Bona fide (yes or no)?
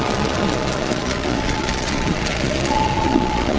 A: no